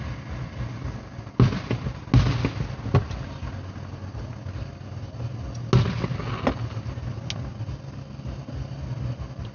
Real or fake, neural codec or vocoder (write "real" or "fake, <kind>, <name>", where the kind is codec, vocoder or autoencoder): real